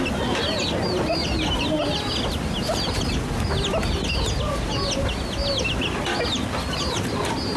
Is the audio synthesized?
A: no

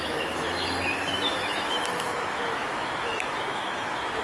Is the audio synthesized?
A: yes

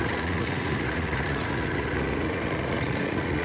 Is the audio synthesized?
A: yes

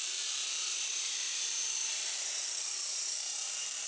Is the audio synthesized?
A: yes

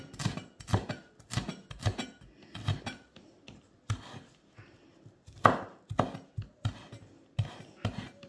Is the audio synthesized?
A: no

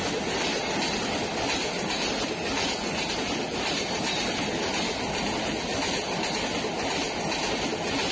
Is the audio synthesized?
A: no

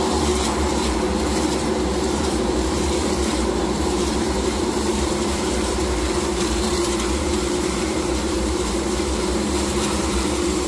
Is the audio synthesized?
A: yes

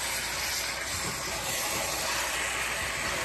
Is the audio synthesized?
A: no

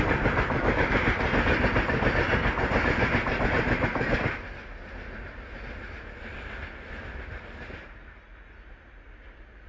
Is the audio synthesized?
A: no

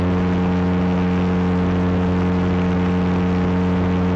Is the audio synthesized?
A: no